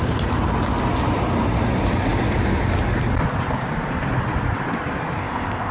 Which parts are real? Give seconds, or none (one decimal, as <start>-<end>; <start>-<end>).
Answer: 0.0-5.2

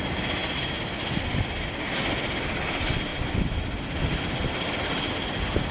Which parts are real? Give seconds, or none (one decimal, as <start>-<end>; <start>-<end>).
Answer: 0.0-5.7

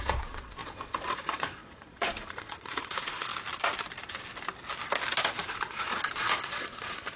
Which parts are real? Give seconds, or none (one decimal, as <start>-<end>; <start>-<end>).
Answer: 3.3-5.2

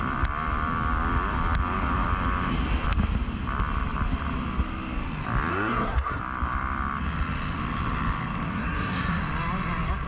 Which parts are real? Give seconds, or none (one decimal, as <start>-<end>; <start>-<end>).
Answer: 0.0-5.5; 6.2-8.5; 9.2-10.1

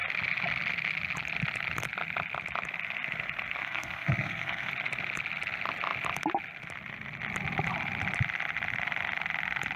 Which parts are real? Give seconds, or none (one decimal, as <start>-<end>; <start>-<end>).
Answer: 0.0-3.6; 4.7-9.8

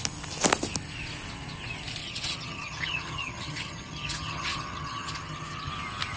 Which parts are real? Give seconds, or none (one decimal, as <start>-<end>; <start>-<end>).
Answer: 0.0-2.0; 5.7-6.2

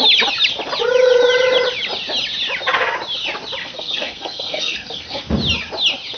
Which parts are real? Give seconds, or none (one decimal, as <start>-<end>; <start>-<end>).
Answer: 0.0-3.6; 5.2-6.2

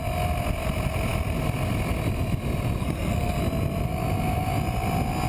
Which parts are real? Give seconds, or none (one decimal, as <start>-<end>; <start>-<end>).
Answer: 0.0-2.8; 3.4-5.3